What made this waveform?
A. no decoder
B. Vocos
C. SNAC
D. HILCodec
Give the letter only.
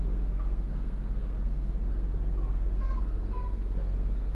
C